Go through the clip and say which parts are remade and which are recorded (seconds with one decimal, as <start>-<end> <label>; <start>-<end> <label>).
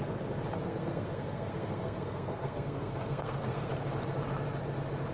0.0-0.6 recorded; 0.6-3.7 remade; 3.7-5.1 recorded